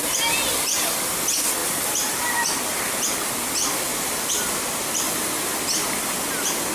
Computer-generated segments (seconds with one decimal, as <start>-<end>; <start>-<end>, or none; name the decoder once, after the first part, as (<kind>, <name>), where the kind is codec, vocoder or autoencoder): 1.6-2.3 (vocoder, BigVGAN v2); 3.9-4.9